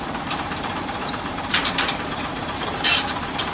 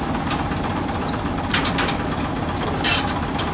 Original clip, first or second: second